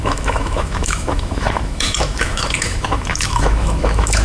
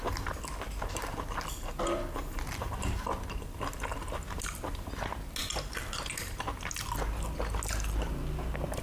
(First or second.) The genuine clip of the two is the second